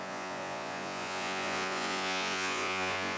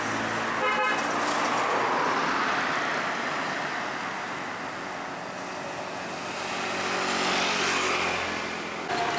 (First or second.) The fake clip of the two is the first